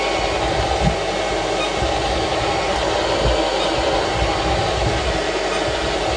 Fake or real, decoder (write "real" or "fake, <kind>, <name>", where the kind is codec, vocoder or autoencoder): real